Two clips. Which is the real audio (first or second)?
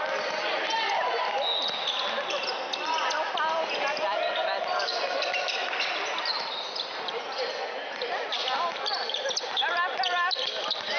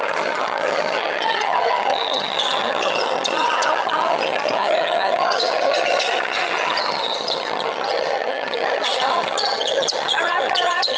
first